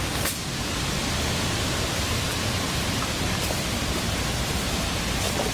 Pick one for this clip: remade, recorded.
recorded